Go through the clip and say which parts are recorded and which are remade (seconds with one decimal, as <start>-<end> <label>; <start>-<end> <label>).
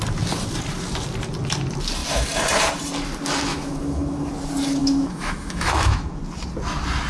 0.0-3.5 recorded; 3.5-4.3 remade; 4.3-4.8 recorded; 4.8-6.2 remade; 6.2-7.1 recorded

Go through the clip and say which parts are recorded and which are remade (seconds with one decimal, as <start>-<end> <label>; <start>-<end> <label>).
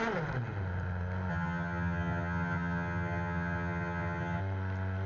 0.0-1.3 recorded; 1.3-4.4 remade; 4.4-5.1 recorded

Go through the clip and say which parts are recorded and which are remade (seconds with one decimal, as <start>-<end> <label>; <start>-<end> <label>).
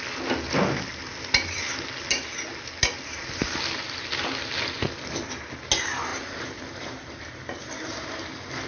0.0-6.1 recorded; 6.1-7.2 remade; 7.2-8.7 recorded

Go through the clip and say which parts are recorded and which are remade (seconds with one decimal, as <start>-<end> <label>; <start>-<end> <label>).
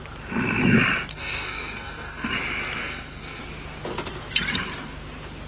0.0-1.1 recorded; 1.1-2.3 remade; 2.3-2.8 recorded; 2.8-3.4 remade; 3.4-5.5 recorded